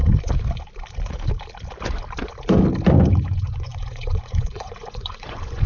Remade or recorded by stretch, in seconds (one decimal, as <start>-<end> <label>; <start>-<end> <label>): 0.0-3.1 recorded; 3.1-5.7 remade